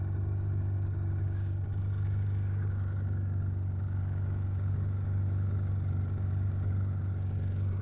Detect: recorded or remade remade